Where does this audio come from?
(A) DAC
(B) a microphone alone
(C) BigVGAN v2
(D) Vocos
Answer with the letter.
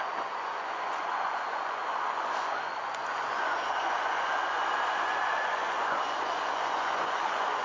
D